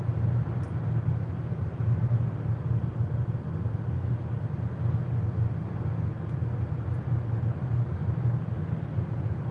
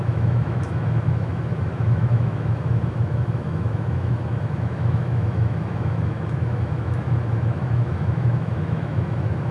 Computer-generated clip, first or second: second